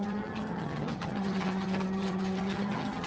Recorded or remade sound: remade